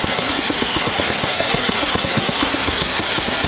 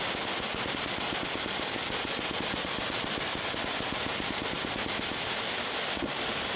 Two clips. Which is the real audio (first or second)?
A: second